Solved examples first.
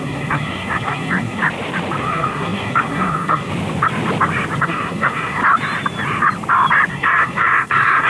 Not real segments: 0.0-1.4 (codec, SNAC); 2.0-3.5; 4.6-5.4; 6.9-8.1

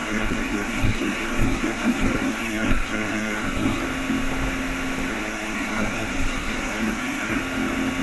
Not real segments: 0.0-3.8 (codec, SNAC); 5.1-7.4

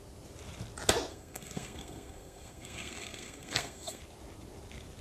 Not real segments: 1.1-4.0 (codec, SNAC)

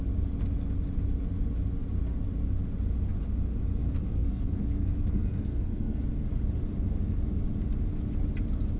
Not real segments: 4.0-6.0 (codec, SNAC)

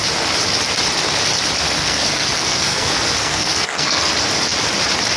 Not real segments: 1.8-4.1 (codec, SNAC)

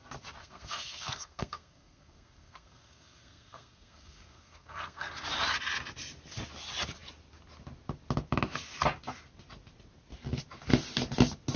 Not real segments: 0.4-5.1 (codec, SNAC)

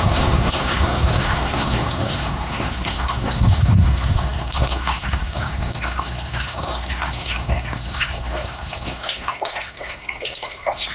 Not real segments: 0.0-10.9 (codec, SNAC)